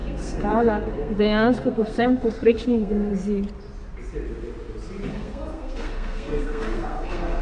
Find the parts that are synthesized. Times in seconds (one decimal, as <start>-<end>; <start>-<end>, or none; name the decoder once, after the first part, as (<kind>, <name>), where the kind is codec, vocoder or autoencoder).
0.0-3.1 (codec, SNAC); 5.1-7.4